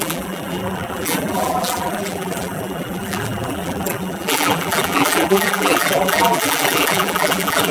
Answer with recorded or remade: remade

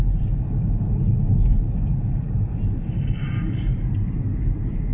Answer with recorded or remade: recorded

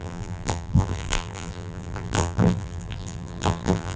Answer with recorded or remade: remade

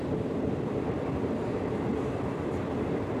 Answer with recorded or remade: remade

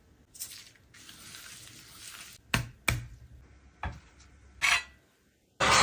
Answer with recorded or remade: recorded